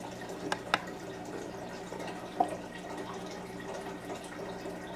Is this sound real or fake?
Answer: real